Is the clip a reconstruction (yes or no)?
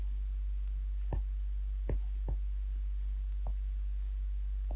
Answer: no